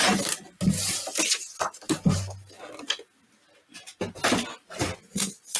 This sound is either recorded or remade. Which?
recorded